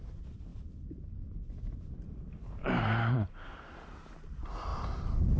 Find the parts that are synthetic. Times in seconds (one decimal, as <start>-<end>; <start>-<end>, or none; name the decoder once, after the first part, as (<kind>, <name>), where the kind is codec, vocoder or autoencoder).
0.0-0.5 (vocoder, BigVGAN v2); 1.6-5.4